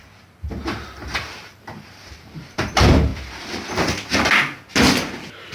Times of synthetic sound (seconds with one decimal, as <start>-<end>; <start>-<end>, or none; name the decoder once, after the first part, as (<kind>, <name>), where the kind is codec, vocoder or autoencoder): 0.0-3.1 (vocoder, BigVGAN v2)